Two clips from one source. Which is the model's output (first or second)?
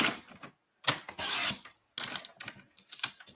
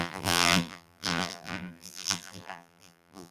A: second